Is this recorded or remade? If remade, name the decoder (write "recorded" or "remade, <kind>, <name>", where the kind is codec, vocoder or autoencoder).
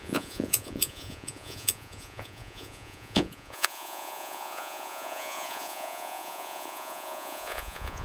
remade, vocoder, Vocos